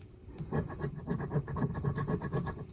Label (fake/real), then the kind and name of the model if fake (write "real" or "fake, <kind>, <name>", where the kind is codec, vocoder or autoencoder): real